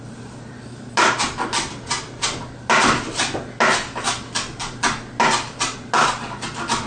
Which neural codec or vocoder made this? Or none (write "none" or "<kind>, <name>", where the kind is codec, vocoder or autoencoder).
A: none